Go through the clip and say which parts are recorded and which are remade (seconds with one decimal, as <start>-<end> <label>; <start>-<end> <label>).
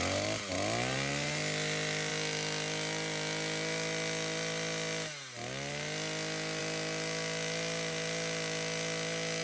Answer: 0.0-9.4 recorded